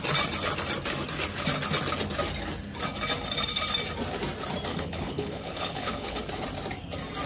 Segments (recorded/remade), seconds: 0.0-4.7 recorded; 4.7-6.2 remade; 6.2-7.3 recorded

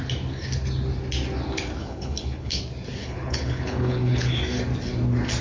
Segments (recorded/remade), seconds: 0.0-1.8 recorded; 1.8-2.6 remade; 2.6-3.0 recorded; 3.0-4.4 remade; 4.4-5.4 recorded

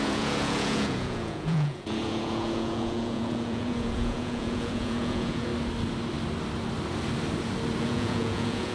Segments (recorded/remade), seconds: 0.0-5.5 remade; 5.5-7.8 recorded; 7.8-8.7 remade

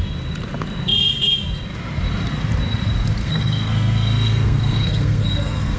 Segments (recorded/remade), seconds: 0.0-3.2 recorded; 3.2-5.8 remade

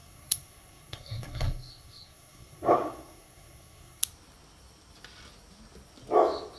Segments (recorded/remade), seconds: 0.0-4.0 remade; 4.0-6.6 recorded

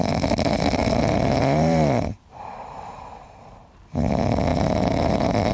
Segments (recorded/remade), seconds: 0.0-0.8 recorded; 0.8-4.1 remade; 4.1-4.5 recorded; 4.5-5.5 remade

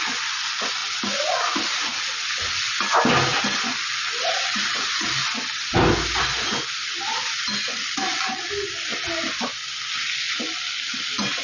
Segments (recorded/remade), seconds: 0.0-4.5 recorded; 4.5-5.3 remade; 5.3-11.4 recorded